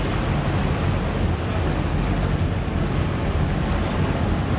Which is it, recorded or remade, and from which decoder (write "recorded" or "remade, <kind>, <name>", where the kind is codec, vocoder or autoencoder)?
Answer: recorded